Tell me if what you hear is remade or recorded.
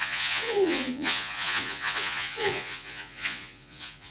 remade